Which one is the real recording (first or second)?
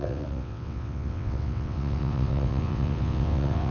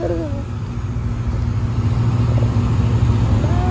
second